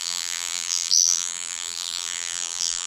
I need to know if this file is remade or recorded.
remade